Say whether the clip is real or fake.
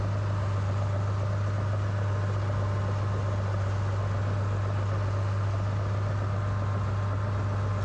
real